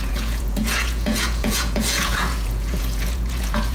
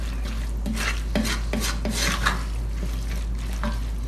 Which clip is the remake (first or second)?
first